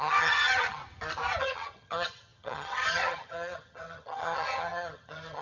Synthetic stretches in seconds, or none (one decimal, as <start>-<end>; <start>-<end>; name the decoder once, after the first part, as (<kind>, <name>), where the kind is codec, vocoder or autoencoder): 0.0-0.8 (vocoder, HiFi-GAN); 1.4-5.4